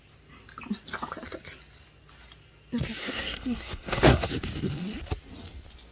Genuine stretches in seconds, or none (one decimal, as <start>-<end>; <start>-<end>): 0.0-3.0; 4.3-5.9

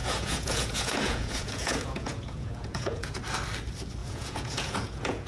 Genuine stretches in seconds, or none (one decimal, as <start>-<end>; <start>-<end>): 3.2-4.0

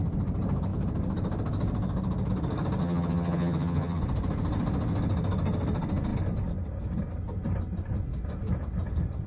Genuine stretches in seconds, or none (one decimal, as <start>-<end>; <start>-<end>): 0.0-2.8; 4.0-9.3